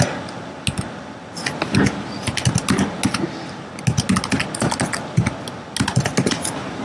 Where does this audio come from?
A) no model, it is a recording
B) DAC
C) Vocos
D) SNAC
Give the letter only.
A